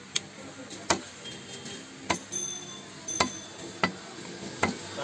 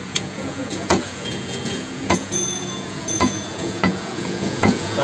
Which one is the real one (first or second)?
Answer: first